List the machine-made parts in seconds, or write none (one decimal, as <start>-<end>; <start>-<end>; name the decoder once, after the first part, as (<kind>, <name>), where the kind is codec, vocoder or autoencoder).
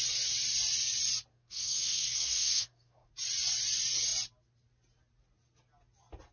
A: 1.3-3.1 (codec, SNAC)